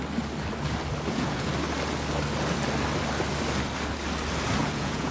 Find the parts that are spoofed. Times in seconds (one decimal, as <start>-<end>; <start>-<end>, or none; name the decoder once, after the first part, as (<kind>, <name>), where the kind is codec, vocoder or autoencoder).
1.1-1.5 (vocoder, Vocos); 4.6-5.1